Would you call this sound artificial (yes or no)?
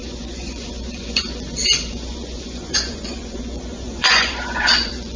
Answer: yes